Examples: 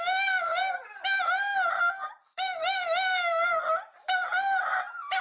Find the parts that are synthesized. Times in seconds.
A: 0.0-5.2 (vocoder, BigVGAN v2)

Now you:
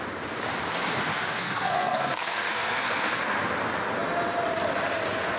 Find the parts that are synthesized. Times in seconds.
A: 1.1-3.2 (codec, SNAC)

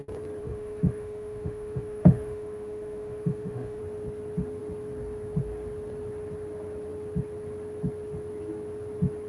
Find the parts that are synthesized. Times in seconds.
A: 0.4-3.8 (autoencoder, DAC-VAE)

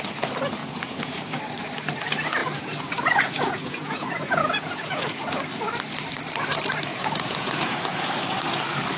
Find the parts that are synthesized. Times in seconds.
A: 0.6-1.3 (vocoder, Vocos); 2.4-5.2; 6.9-8.1

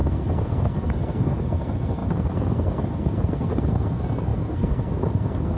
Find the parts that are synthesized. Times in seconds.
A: 0.0-5.6 (codec, SNAC)

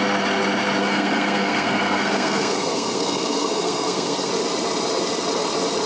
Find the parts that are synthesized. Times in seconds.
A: 0.8-4.3 (codec, SNAC)

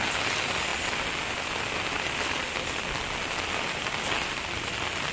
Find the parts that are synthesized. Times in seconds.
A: none